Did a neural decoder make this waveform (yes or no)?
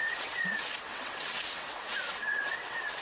yes